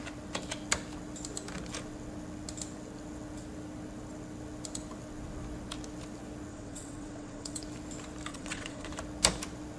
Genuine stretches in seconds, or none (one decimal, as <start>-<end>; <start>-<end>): 0.0-6.5; 7.6-8.3; 8.9-9.8